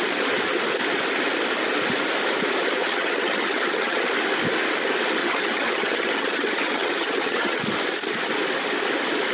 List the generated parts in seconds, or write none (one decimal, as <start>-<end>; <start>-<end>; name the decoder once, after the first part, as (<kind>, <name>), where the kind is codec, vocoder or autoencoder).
2.8-4.1 (vocoder, HiFi-GAN); 5.2-7.6